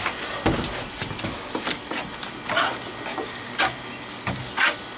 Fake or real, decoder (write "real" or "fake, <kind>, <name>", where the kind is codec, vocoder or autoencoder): real